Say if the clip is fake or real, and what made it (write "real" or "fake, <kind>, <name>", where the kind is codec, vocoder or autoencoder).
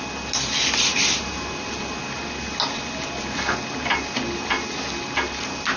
real